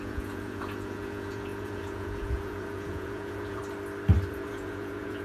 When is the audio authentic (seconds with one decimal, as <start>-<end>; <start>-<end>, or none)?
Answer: 3.6-4.3